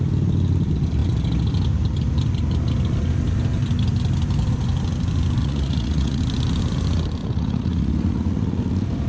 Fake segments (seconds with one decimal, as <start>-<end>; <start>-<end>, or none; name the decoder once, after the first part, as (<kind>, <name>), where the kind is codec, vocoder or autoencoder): 5.4-6.2 (vocoder, Vocos); 7.2-8.6